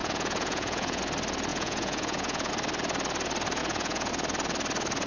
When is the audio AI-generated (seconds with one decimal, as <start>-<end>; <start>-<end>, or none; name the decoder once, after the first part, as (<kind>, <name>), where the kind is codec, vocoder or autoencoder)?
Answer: 0.0-1.0 (vocoder, Vocos); 1.5-2.5; 3.6-4.1